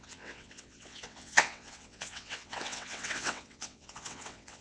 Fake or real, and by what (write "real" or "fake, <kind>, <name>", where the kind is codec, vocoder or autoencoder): fake, vocoder, WaveNeXt